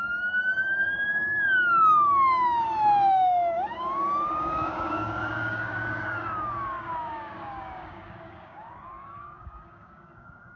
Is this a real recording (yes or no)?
no